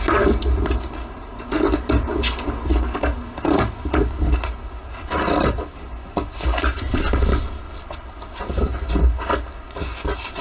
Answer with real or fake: real